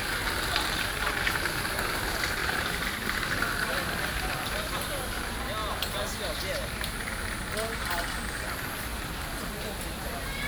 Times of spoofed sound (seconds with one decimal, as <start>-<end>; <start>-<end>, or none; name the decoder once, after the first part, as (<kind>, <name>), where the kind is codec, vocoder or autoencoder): 2.4-4.7 (vocoder, BigVGAN v2)